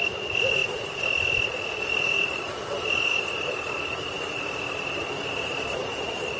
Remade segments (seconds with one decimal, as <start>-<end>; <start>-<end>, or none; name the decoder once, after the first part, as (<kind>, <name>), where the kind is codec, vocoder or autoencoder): none